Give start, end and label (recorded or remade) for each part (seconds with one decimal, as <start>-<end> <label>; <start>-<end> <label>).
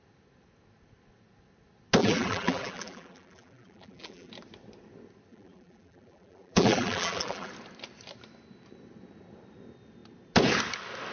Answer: 0.0-2.0 recorded; 2.0-4.3 remade; 4.3-5.3 recorded; 5.3-7.5 remade; 7.5-11.1 recorded